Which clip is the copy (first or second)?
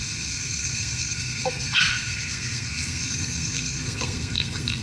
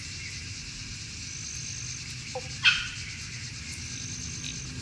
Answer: first